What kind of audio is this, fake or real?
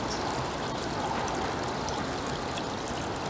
real